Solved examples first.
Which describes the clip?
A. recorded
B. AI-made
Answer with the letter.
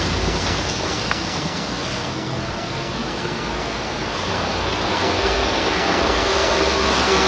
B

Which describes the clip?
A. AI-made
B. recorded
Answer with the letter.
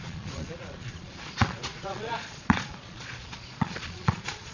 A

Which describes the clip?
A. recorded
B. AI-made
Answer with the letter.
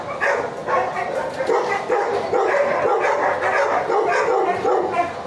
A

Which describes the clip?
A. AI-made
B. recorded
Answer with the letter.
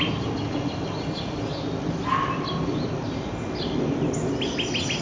B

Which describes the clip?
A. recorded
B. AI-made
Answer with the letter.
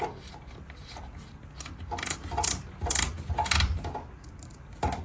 A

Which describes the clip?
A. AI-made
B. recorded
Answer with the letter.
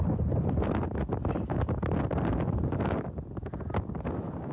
B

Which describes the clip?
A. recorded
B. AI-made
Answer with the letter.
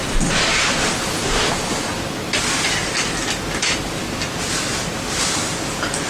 A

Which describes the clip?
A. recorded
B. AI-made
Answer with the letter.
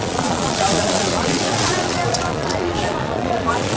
B